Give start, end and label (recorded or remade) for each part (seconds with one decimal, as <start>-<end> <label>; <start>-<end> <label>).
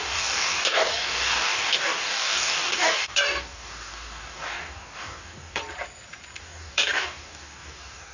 0.0-5.6 remade; 5.6-6.4 recorded; 6.4-8.1 remade